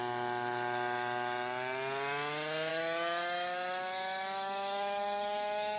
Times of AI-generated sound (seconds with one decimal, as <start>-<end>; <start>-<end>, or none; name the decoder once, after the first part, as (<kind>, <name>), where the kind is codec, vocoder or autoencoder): 2.7-5.8 (autoencoder, DAC-VAE)